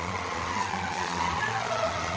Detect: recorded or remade remade